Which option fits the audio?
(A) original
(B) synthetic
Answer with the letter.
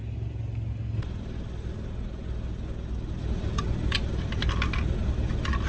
A